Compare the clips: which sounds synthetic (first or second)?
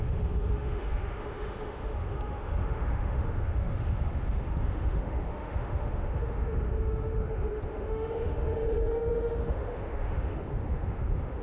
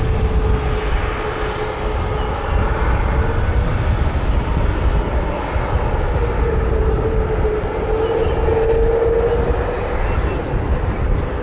first